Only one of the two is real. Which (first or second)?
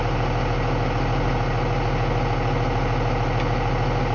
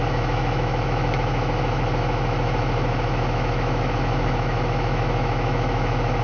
first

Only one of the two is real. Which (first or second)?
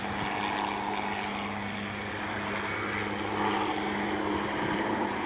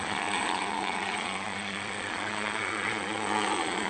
first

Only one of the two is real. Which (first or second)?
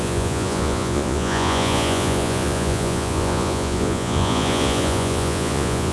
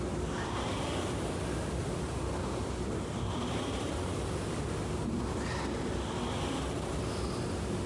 second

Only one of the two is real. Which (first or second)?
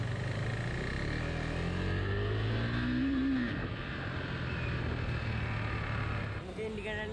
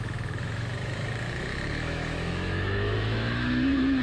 first